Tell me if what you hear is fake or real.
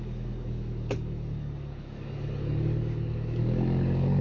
fake